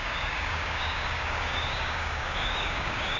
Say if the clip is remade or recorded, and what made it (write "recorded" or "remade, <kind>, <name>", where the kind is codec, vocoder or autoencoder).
remade, codec, DAC